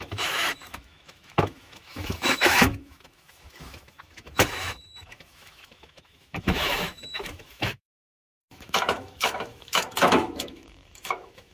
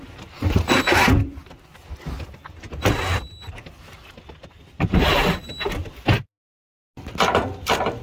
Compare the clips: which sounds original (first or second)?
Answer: second